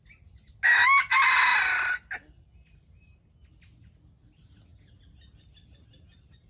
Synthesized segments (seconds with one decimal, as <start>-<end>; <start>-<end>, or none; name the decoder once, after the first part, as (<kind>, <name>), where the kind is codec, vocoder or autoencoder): none